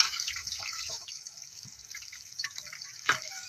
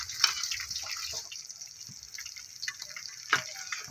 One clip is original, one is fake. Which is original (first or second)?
second